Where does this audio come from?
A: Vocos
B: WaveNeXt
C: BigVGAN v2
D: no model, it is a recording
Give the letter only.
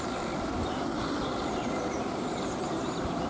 C